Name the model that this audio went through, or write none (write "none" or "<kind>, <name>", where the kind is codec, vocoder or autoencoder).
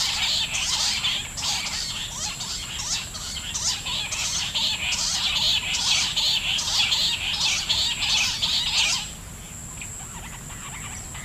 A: none